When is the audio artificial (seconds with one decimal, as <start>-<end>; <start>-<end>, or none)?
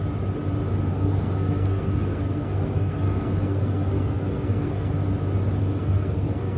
0.9-4.9; 5.6-6.6